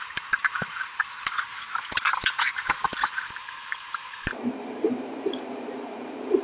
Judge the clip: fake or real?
fake